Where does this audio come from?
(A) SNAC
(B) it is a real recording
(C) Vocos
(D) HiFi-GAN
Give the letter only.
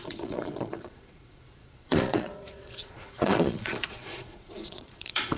C